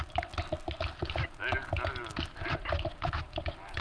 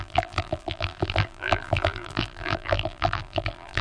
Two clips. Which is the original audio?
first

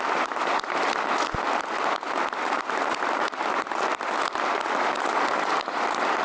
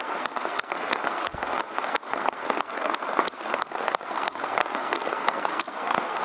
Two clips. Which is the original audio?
first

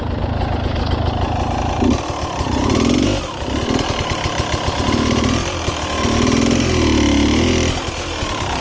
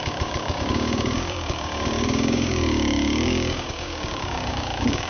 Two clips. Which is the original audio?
first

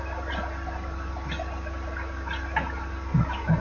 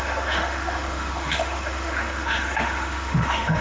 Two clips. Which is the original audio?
first